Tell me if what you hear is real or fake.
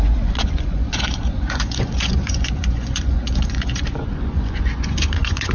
fake